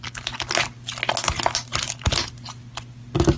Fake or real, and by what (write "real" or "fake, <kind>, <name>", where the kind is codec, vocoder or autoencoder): real